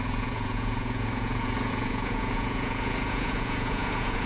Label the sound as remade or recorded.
remade